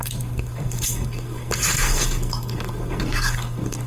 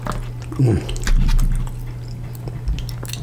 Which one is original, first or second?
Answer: second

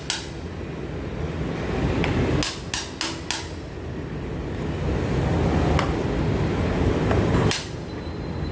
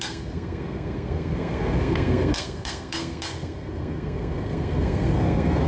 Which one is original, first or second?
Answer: first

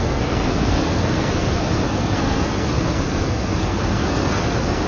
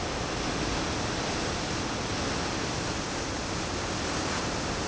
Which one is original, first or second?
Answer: second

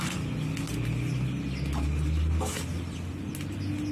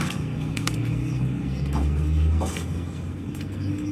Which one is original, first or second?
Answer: first